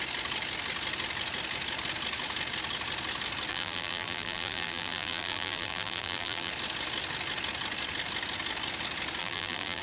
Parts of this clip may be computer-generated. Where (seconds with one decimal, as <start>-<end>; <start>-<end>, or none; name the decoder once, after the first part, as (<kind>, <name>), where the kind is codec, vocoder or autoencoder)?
3.5-6.5 (vocoder, BigVGAN v2); 9.2-9.8